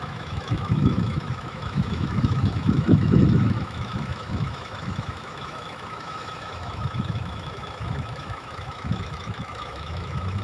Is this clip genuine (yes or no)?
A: no